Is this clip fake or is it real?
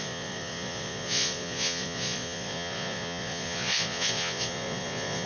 fake